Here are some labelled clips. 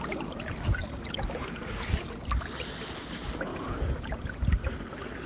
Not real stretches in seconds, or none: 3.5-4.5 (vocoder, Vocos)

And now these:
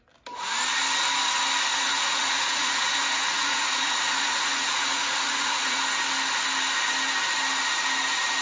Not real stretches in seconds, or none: 1.7-5.8 (vocoder, Vocos)

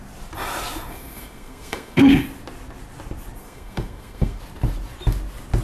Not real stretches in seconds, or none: 0.9-2.2 (codec, SNAC); 3.4-4.4

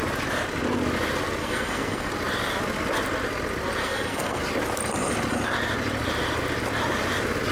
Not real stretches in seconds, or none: 1.4-2.1 (codec, SNAC); 3.8-4.4